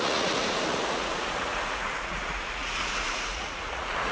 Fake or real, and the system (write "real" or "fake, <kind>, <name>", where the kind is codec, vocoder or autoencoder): fake, vocoder, Vocos